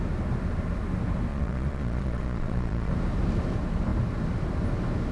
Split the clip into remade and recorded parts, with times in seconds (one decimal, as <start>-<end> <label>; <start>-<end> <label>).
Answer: 0.0-1.3 recorded; 1.3-2.9 remade; 2.9-5.1 recorded